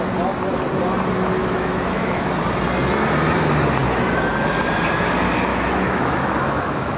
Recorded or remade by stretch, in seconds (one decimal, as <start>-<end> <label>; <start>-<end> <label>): 0.0-1.4 recorded; 1.4-2.3 remade; 2.3-5.5 recorded; 5.5-7.0 remade